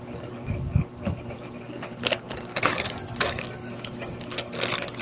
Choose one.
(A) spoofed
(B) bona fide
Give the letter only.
A